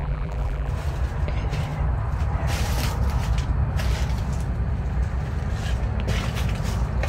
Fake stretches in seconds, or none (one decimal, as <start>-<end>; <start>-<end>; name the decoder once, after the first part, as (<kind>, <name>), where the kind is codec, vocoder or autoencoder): 0.0-0.7 (vocoder, BigVGAN v2)